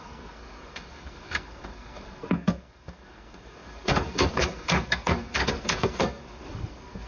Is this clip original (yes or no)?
no